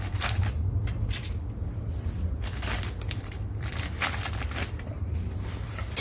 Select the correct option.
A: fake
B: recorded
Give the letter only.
A